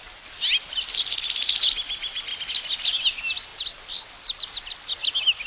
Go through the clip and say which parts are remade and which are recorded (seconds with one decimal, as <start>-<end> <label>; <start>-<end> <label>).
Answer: 0.0-5.5 recorded